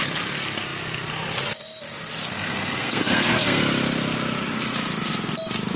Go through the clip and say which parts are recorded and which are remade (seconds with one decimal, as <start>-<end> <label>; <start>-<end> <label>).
0.0-2.2 recorded; 2.2-3.6 remade; 3.6-5.8 recorded